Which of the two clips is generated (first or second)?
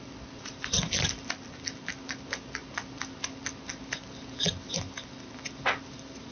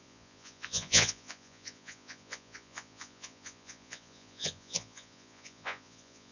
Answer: second